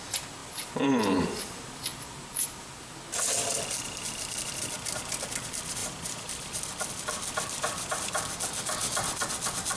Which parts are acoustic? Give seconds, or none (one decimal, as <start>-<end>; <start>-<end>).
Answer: 0.0-0.4; 1.4-1.9; 2.9-5.8; 8.0-9.8